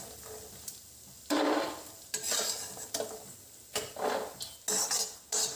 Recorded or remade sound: recorded